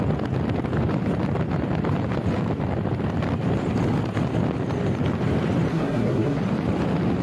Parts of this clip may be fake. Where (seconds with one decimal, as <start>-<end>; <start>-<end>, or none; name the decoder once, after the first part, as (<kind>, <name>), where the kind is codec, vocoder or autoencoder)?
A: 5.7-6.4 (codec, SNAC)